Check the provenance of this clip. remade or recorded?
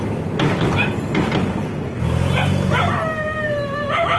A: recorded